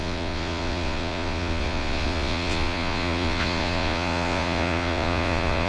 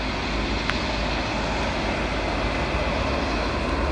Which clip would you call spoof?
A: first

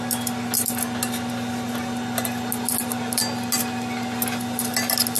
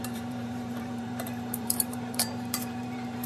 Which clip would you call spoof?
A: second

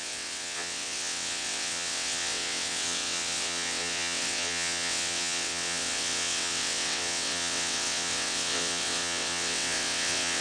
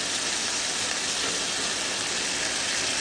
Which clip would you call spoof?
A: first